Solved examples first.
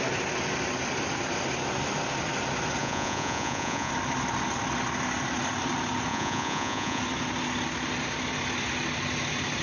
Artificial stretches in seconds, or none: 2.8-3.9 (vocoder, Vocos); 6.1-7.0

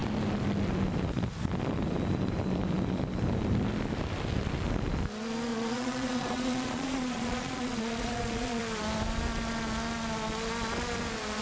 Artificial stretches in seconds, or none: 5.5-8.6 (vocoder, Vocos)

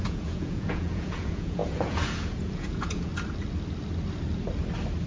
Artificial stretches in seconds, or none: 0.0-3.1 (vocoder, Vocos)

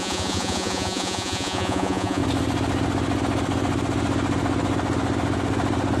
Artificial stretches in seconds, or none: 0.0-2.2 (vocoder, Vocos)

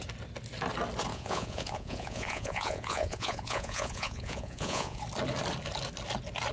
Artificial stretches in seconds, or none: 1.1-5.0 (vocoder, Vocos)